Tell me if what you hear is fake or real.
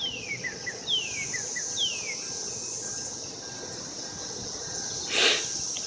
real